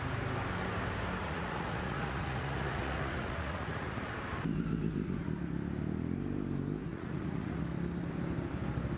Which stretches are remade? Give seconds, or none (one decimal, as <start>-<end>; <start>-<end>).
1.2-4.1; 6.9-7.6